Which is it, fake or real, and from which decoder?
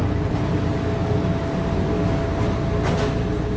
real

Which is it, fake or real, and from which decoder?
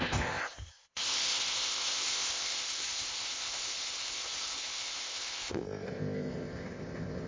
fake, codec, ZipCodec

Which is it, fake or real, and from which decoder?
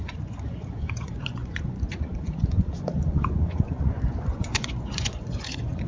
fake, vocoder, Vocos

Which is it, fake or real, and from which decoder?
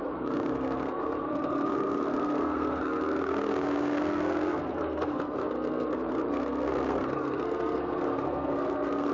fake, codec, SNAC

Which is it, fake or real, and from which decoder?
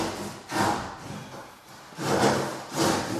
real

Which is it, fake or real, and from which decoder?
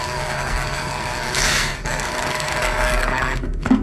fake, codec, SNAC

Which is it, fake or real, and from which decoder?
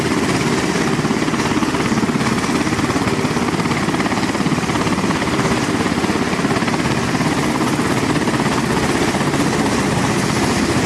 real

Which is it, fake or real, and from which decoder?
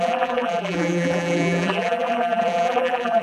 fake, vocoder, BigVGAN v2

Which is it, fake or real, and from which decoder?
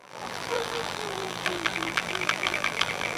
fake, vocoder, BigVGAN v2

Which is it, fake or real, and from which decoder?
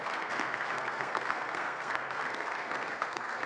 fake, codec, SNAC